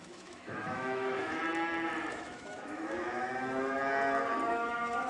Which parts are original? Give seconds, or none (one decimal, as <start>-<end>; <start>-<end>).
1.4-2.1; 3.8-4.5